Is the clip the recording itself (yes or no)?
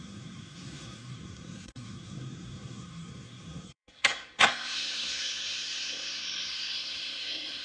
no